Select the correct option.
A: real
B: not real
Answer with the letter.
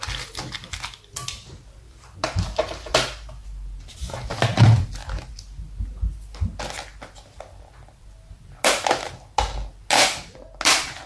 A